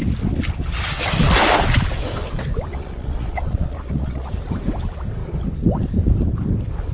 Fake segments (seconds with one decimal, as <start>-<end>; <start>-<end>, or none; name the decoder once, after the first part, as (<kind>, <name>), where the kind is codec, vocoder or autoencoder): 2.7-4.3 (vocoder, Vocos)